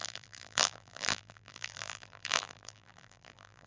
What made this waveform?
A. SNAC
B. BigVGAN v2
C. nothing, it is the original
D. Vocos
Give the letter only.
B